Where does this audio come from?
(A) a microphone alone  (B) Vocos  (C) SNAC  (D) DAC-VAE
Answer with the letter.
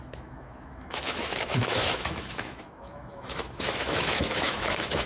D